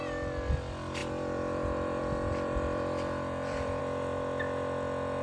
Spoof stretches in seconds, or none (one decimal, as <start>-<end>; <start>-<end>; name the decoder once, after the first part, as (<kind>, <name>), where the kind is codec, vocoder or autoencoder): 1.0-3.8 (vocoder, BigVGAN v2)